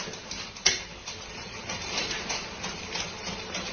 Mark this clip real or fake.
real